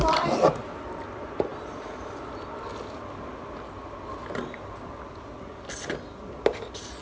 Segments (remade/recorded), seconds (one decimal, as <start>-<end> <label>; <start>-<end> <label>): 0.0-7.0 recorded